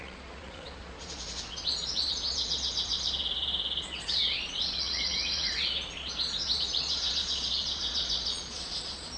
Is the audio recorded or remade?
remade